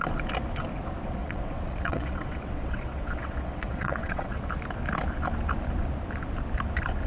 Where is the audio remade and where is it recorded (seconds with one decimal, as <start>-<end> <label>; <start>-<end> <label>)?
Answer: 0.0-1.2 recorded; 1.2-4.4 remade; 4.4-7.1 recorded